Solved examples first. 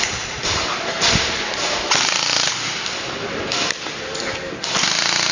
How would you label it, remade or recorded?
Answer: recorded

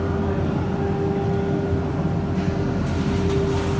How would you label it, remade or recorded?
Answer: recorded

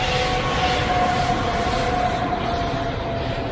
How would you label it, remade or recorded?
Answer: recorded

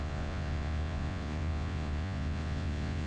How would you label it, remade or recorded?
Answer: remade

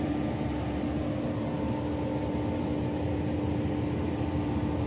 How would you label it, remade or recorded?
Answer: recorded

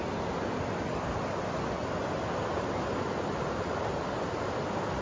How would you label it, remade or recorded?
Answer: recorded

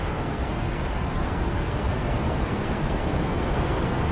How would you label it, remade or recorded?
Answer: remade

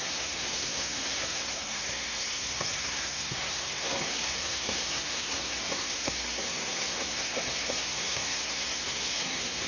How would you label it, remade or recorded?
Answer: remade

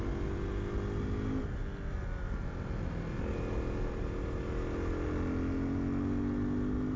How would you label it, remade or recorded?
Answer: recorded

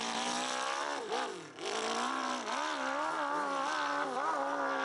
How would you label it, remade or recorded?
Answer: recorded